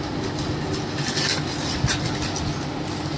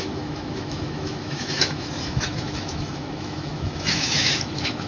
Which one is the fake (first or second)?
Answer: second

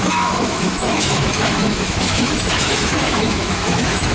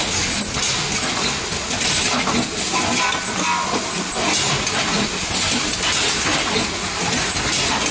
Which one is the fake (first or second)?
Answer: first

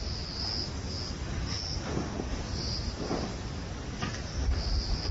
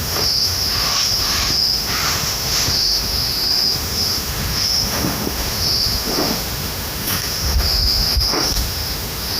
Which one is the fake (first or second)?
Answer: second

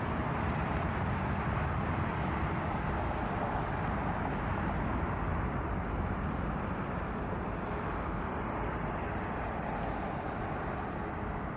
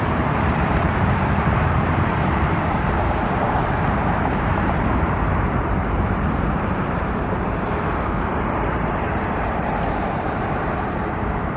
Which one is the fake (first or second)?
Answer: second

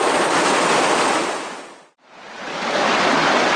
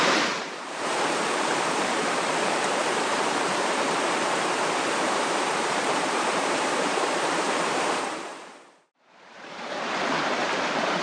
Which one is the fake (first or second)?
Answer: second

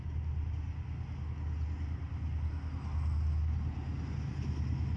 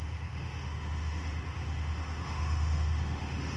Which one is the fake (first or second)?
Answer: second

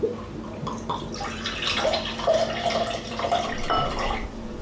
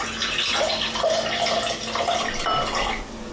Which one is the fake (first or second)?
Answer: first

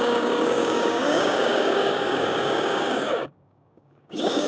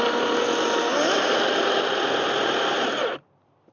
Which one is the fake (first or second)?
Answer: first